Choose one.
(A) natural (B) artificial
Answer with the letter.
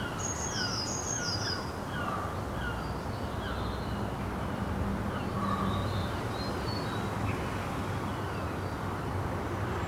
A